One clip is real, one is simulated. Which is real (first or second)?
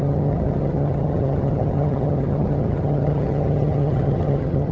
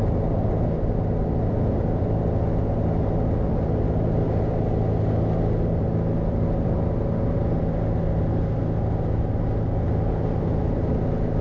second